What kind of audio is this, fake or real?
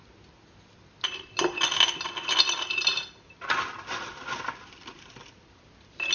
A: real